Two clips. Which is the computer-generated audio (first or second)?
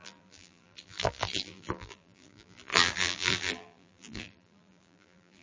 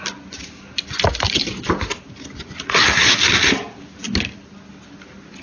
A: first